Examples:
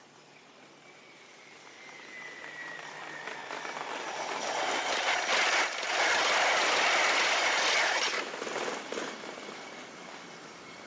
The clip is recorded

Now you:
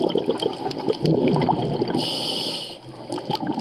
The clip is recorded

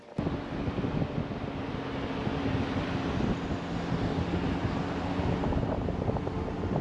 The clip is recorded